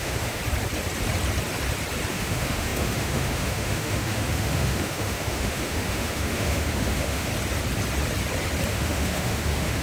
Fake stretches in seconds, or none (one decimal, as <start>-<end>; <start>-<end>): 0.0-0.4; 2.1-7.3; 8.7-9.8